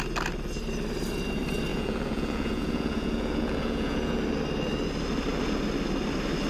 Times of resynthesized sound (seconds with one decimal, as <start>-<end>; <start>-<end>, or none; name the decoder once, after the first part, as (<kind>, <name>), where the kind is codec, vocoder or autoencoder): 1.7-4.2 (vocoder, Vocos)